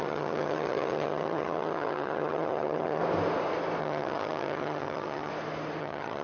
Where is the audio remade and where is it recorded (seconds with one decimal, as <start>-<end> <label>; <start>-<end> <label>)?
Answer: 0.0-3.0 remade; 3.0-3.8 recorded; 3.8-5.3 remade; 5.3-5.8 recorded; 5.8-6.2 remade